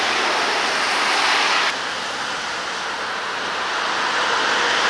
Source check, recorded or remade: recorded